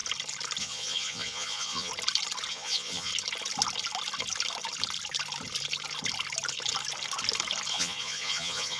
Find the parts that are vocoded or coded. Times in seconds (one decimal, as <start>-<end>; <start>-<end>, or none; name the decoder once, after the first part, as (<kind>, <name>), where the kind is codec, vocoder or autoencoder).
0.6-1.9 (vocoder, Vocos); 2.5-3.1; 7.7-8.8